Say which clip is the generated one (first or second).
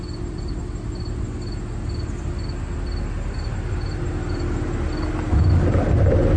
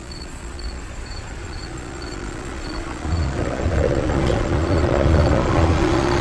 second